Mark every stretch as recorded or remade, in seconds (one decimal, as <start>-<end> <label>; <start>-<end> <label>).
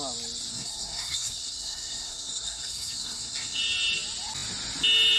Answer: 0.0-0.5 recorded; 0.5-3.6 remade; 3.6-5.2 recorded